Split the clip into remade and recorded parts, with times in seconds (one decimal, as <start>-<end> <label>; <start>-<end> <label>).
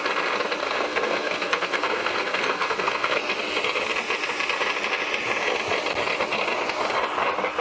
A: 0.0-0.6 recorded; 0.6-3.2 remade; 3.2-7.6 recorded